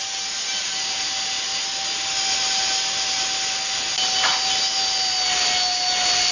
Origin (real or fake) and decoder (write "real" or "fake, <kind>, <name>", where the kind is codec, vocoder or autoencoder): real